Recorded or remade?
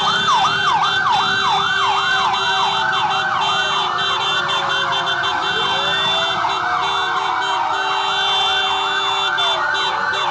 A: recorded